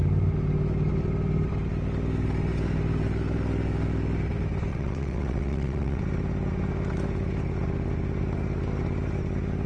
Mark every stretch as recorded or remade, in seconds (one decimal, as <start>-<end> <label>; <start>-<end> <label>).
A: 0.0-4.7 recorded; 4.7-6.0 remade; 6.0-9.7 recorded